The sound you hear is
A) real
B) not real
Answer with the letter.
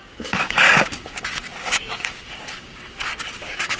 B